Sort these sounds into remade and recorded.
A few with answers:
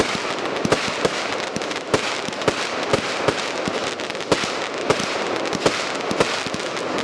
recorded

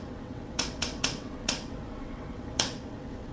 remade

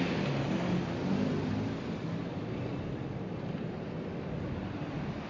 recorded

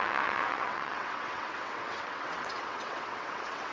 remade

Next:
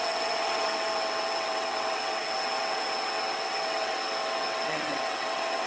remade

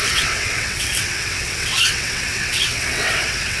remade